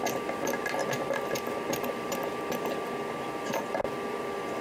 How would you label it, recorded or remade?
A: recorded